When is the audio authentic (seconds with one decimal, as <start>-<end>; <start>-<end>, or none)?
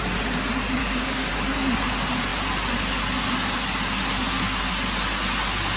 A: 0.0-0.8; 1.3-5.8